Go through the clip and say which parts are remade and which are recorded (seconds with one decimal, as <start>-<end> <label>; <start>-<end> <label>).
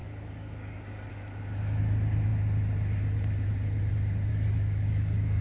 0.0-1.1 remade; 1.1-4.3 recorded; 4.3-5.4 remade